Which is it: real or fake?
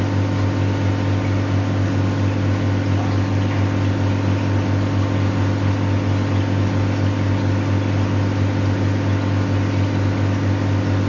real